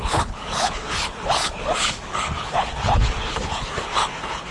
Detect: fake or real fake